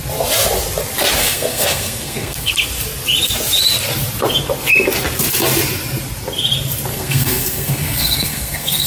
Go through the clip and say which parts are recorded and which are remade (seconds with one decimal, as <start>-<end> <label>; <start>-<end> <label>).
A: 0.0-1.2 recorded; 1.2-2.5 remade; 2.5-6.9 recorded; 6.9-8.9 remade